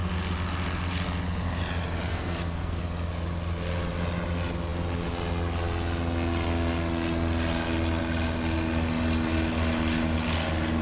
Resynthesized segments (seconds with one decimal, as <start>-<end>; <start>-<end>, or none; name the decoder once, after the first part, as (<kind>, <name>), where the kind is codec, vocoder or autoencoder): 2.1-2.8 (codec, SNAC)